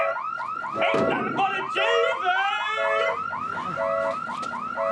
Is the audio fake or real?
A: real